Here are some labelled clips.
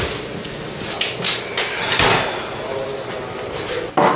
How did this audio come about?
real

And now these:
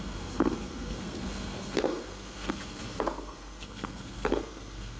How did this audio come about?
fake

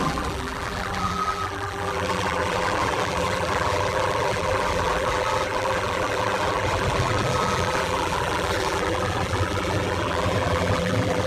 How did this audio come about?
fake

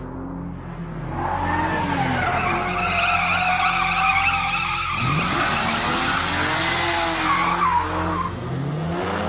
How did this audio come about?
real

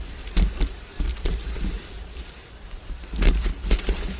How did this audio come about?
fake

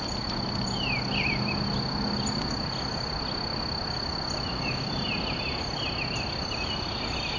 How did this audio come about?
real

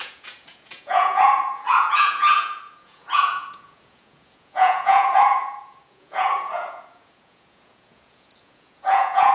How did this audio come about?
fake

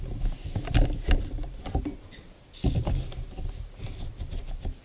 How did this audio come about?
real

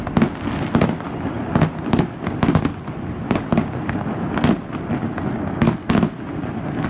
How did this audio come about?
real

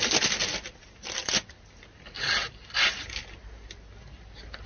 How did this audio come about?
real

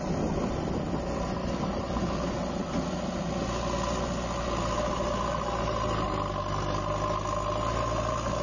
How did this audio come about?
real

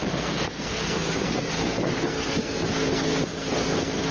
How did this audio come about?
fake